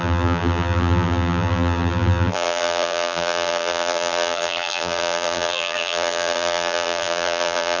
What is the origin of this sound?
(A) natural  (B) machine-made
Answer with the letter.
B